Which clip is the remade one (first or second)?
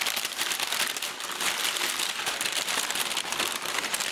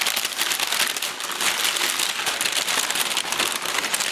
first